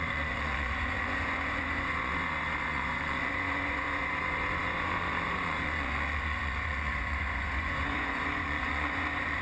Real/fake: fake